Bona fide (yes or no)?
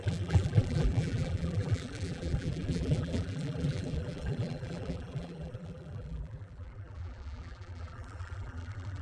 no